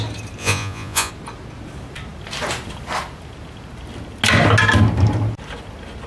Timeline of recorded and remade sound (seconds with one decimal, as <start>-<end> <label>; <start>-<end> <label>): 0.0-0.4 recorded; 0.4-1.1 remade; 1.1-6.1 recorded